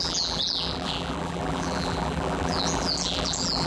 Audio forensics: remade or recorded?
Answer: remade